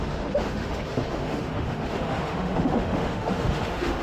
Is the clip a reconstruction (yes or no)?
yes